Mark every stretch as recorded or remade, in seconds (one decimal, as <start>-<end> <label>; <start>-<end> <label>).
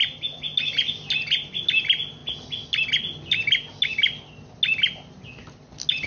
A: 0.0-6.1 recorded